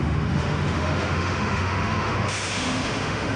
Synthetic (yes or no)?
yes